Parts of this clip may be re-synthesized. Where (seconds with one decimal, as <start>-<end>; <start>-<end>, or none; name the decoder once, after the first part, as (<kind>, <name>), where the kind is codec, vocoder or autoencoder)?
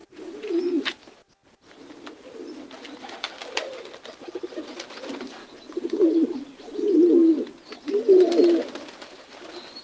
0.0-0.6 (vocoder, Vocos); 5.4-6.9